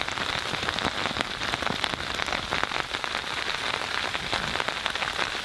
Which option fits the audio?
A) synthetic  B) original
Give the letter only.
A